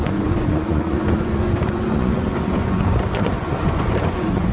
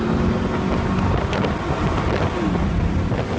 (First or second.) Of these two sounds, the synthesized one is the first